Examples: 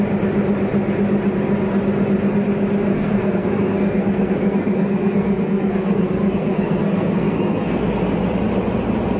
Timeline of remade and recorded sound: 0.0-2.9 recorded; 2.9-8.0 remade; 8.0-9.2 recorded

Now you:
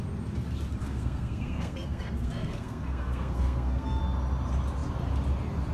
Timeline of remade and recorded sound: 0.0-0.8 recorded; 0.8-4.0 remade; 4.0-5.7 recorded

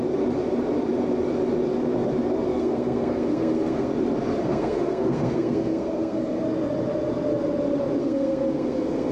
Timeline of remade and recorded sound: 0.0-2.5 recorded; 2.5-3.9 remade; 3.9-4.4 recorded; 4.4-6.4 remade; 6.4-8.0 recorded; 8.0-9.1 remade

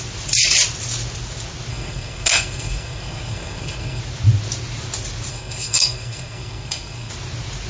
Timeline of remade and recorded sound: 0.0-1.7 recorded; 1.7-4.0 remade; 4.0-5.3 recorded; 5.3-7.1 remade; 7.1-7.7 recorded

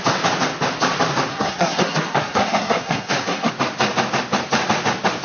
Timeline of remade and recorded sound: 0.0-1.3 recorded; 1.3-3.5 remade; 3.5-5.2 recorded

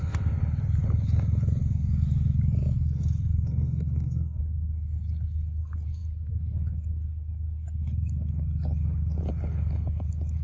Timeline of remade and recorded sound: 0.0-3.3 recorded; 3.3-4.4 remade; 4.4-10.4 recorded

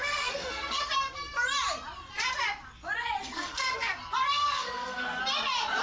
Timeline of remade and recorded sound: 0.0-0.9 remade; 0.9-3.2 recorded; 3.2-3.9 remade; 3.9-4.3 recorded; 4.3-5.2 remade; 5.2-5.8 recorded